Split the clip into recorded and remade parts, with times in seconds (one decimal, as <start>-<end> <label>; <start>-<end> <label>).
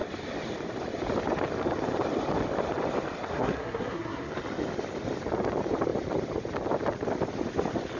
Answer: 0.0-3.3 recorded; 3.3-4.3 remade; 4.3-8.0 recorded